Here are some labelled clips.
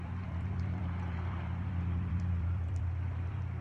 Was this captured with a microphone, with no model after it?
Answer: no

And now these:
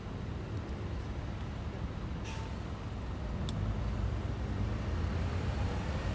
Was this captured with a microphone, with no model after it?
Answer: yes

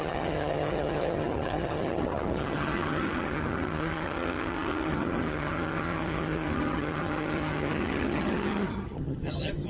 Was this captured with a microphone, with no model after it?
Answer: no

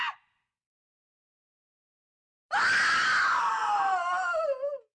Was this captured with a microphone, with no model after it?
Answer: yes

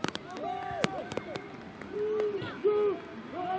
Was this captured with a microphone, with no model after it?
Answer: yes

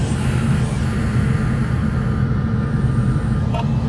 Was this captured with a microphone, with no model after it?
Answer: yes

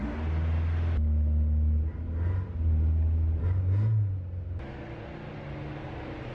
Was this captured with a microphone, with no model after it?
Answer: yes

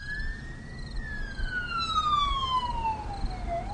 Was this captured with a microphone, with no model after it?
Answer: yes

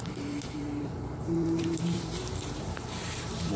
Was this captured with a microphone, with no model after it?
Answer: no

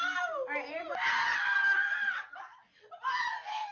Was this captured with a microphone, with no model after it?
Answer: yes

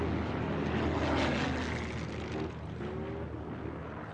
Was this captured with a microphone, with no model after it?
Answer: yes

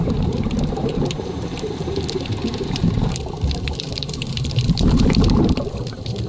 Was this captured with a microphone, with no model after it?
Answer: no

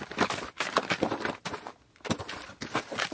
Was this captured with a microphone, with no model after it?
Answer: yes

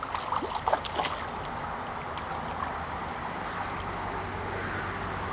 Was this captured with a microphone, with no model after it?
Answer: yes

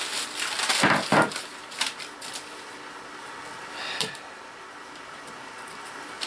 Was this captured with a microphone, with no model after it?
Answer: yes